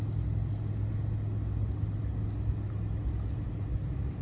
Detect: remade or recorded recorded